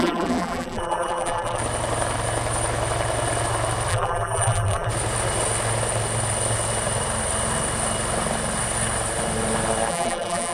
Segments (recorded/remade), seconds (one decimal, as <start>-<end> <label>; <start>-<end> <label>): 0.0-1.6 remade; 1.6-3.9 recorded; 3.9-4.9 remade; 4.9-9.9 recorded; 9.9-10.5 remade